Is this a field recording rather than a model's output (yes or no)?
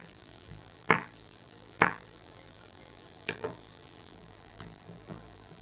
no